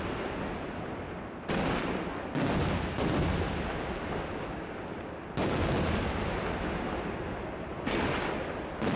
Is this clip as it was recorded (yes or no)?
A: yes